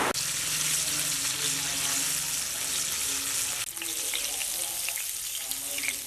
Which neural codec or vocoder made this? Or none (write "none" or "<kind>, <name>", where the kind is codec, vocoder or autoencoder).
none